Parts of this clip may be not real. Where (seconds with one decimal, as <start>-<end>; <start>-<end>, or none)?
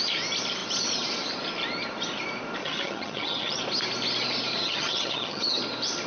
2.6-3.6; 4.6-5.6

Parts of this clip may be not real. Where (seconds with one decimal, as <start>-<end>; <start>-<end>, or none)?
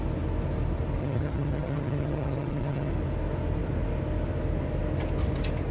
1.0-2.9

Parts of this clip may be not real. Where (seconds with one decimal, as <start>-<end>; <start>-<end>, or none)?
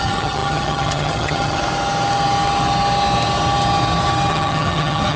0.0-1.6; 4.3-5.2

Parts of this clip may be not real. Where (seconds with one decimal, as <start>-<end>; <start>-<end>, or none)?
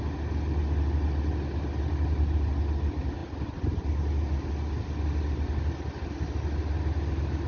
none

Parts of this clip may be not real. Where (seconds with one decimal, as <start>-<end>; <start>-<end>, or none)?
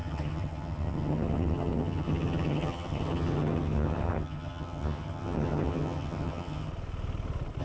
0.0-6.7